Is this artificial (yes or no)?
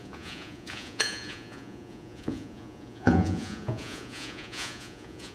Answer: yes